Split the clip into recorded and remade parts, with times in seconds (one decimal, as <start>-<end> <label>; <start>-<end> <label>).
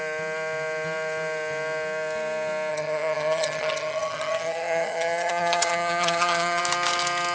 0.0-2.7 recorded; 2.7-6.6 remade; 6.6-7.3 recorded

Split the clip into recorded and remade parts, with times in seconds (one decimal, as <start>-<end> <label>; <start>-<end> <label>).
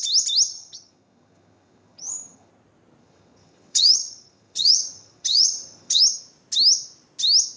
0.0-0.5 recorded; 0.5-2.5 remade; 2.5-3.0 recorded; 3.0-6.0 remade; 6.0-7.6 recorded